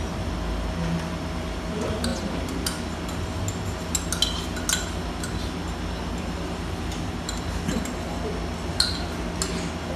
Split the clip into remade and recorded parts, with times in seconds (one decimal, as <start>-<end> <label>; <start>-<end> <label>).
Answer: 0.0-10.0 recorded

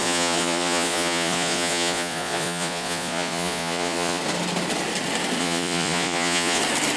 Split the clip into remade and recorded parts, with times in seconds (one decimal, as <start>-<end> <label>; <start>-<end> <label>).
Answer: 0.0-4.2 remade; 4.2-5.4 recorded; 5.4-6.6 remade; 6.6-7.0 recorded

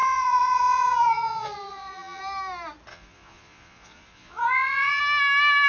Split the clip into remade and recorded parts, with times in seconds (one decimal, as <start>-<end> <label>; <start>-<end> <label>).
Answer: 0.0-2.2 remade; 2.2-2.9 recorded; 2.9-5.0 remade; 5.0-5.7 recorded

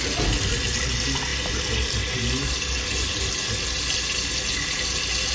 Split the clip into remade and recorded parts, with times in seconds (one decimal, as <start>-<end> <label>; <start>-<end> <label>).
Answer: 0.0-5.3 recorded

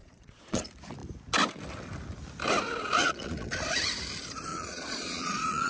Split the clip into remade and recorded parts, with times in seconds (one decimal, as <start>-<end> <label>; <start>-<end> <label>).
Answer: 0.0-0.6 remade; 0.6-3.0 recorded; 3.0-3.5 remade; 3.5-4.5 recorded; 4.5-5.7 remade

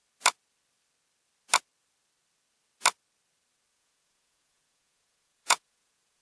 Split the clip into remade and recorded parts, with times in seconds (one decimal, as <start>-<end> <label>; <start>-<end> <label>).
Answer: 0.0-3.7 recorded; 3.7-6.2 remade

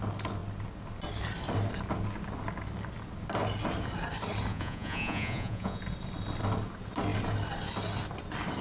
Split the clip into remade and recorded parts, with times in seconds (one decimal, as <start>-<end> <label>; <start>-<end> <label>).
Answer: 0.0-4.5 recorded; 4.5-5.8 remade; 5.8-8.6 recorded

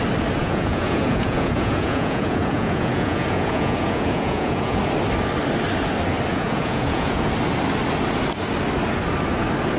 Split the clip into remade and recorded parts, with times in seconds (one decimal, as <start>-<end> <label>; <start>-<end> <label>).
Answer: 0.0-0.4 recorded; 0.4-4.8 remade; 4.8-6.3 recorded; 6.3-7.3 remade; 7.3-9.8 recorded